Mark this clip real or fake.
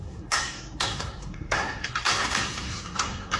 fake